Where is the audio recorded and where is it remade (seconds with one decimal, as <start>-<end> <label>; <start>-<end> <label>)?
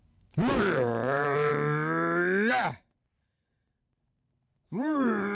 0.0-1.5 remade; 1.5-2.5 recorded; 2.5-5.3 remade